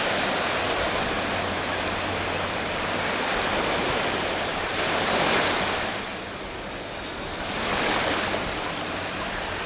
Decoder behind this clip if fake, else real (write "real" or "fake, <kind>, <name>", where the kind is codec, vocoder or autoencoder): real